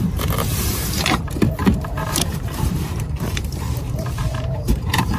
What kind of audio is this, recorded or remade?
remade